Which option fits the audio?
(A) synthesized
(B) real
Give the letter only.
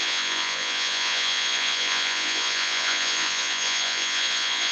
A